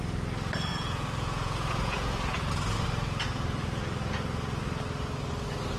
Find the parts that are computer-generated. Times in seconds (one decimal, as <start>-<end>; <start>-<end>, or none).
0.7-2.5